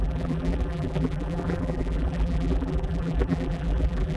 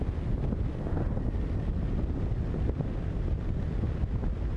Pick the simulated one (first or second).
first